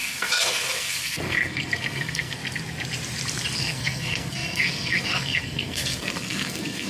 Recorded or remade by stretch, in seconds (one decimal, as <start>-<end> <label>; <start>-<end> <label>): 0.0-2.4 remade; 2.4-3.6 recorded; 3.6-6.9 remade